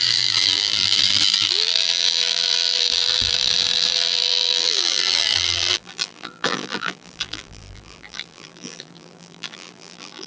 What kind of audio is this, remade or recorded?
remade